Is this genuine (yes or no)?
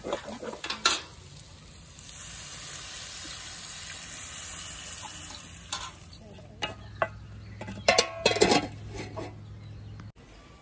yes